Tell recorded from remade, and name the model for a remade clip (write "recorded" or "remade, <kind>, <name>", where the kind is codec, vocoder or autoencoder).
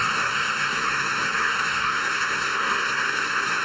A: remade, codec, SNAC